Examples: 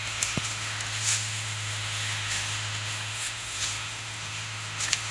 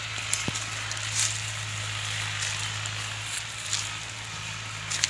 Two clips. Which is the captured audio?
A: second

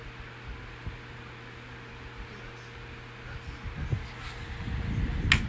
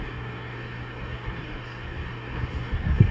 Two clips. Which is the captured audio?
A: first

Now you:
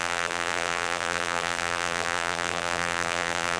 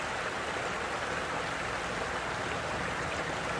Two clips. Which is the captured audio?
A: second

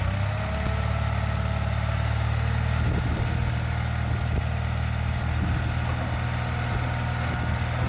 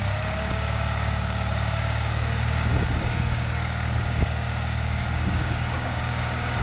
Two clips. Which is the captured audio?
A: first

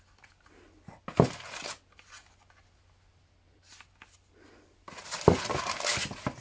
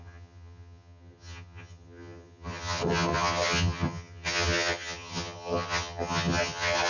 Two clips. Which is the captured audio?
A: first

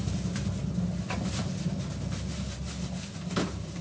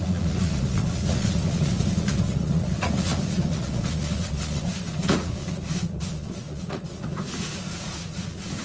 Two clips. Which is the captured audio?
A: first